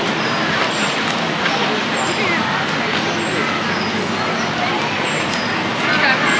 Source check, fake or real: real